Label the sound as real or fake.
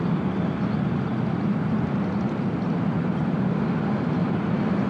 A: real